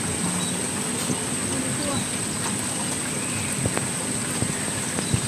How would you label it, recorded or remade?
recorded